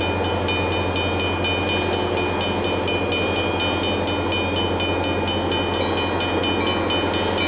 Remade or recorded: recorded